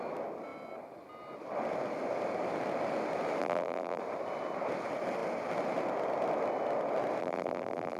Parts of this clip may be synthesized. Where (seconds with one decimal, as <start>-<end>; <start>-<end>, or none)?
3.4-4.0; 7.2-8.0